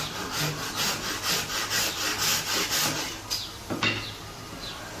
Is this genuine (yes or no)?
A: yes